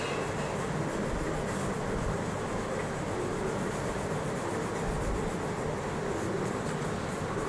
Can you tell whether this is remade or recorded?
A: recorded